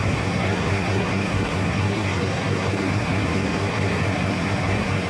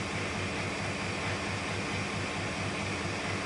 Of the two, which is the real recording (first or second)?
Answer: second